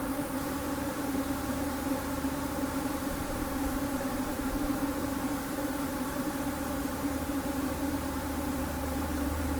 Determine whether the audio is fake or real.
fake